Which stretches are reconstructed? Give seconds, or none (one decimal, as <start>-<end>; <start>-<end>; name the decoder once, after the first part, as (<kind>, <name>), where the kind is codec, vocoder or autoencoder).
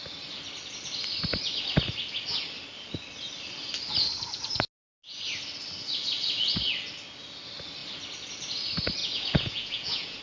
9.0-10.2 (vocoder, Vocos)